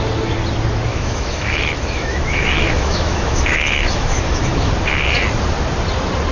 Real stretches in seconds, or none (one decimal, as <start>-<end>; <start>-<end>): 0.0-0.9; 4.7-6.3